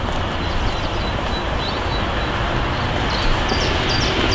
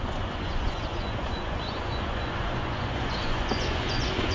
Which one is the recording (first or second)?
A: first